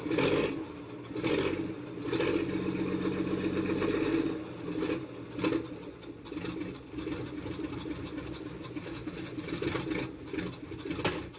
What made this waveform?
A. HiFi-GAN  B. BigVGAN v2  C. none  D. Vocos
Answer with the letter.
C